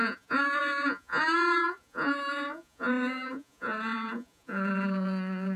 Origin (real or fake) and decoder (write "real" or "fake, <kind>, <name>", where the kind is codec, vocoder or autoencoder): fake, vocoder, Vocos